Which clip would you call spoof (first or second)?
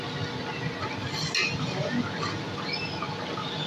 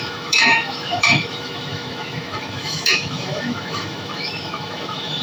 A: second